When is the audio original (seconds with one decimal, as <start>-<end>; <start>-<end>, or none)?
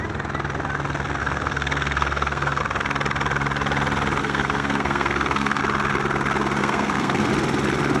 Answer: 0.0-1.2; 2.6-4.2; 5.6-6.6; 7.3-8.0